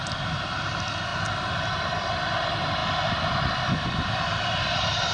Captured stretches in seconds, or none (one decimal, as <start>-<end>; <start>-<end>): 0.0-1.1; 2.3-5.1